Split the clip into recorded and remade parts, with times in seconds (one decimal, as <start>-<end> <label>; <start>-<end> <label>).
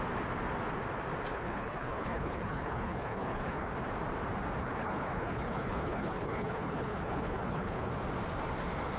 0.0-1.3 recorded; 1.3-3.7 remade; 3.7-4.6 recorded; 4.6-7.9 remade; 7.9-9.0 recorded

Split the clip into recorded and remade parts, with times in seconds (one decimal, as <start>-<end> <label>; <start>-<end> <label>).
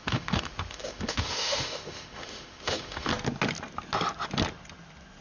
0.0-3.1 remade; 3.1-5.2 recorded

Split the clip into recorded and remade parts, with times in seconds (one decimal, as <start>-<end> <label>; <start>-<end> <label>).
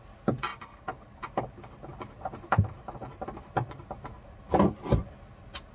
0.0-1.9 recorded; 1.9-4.4 remade; 4.4-5.7 recorded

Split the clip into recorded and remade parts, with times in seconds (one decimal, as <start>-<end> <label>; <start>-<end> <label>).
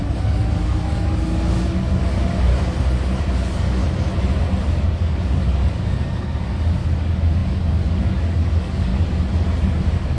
0.0-2.5 remade; 2.5-3.2 recorded; 3.2-3.8 remade; 3.8-4.8 recorded; 4.8-8.9 remade; 8.9-9.6 recorded; 9.6-10.2 remade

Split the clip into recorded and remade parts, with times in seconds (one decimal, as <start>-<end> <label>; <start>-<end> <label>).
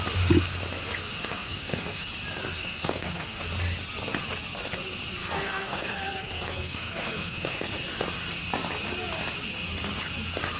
0.0-1.0 recorded; 1.0-2.1 remade; 2.1-2.5 recorded; 2.5-3.4 remade; 3.4-5.2 recorded; 5.2-7.7 remade; 7.7-10.6 recorded